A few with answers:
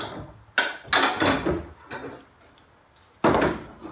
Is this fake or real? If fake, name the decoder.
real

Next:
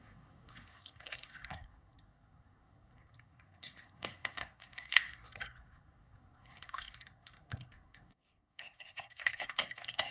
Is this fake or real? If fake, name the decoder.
fake, codec, SNAC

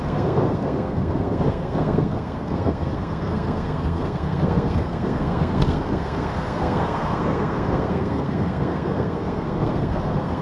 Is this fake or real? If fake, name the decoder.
fake, codec, SNAC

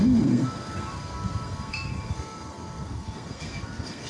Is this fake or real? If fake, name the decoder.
fake, codec, SNAC